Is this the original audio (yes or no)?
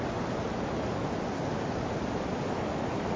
yes